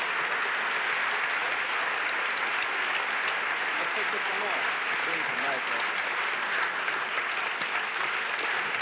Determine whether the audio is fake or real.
real